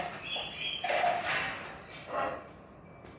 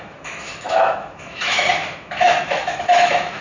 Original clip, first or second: first